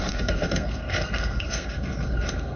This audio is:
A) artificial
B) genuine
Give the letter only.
A